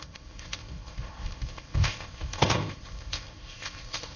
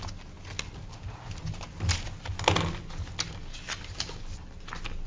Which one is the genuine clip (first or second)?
second